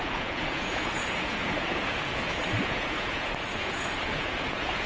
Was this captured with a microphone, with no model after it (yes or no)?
no